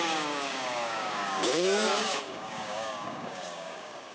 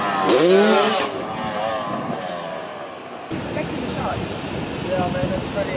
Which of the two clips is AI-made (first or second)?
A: first